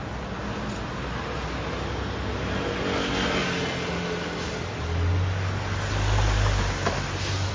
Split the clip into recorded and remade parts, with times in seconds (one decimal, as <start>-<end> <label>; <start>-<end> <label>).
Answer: 0.0-7.5 recorded